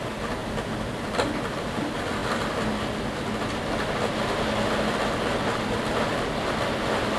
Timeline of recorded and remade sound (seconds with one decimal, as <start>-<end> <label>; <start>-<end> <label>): 0.0-7.2 recorded